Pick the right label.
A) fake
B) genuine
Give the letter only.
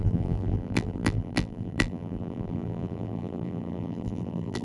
A